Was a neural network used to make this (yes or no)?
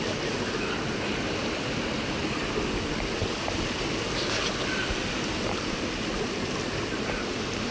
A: no